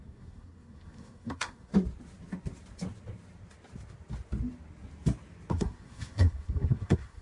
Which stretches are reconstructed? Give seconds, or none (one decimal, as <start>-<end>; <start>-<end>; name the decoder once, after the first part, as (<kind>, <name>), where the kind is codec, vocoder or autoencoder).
0.0-1.7 (codec, SNAC); 5.5-7.2